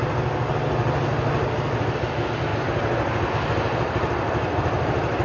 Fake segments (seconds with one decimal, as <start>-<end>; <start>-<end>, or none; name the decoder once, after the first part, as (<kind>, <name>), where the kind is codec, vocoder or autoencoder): none